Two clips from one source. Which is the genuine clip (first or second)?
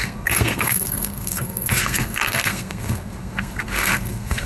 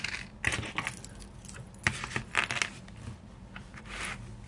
second